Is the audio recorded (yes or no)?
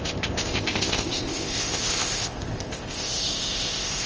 no